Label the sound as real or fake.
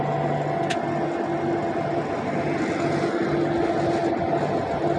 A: real